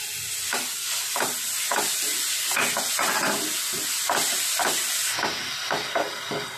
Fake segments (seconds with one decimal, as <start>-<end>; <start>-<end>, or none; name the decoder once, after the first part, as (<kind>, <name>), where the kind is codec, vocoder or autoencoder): none